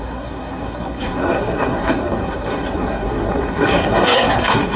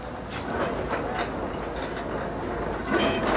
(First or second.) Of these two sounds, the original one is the second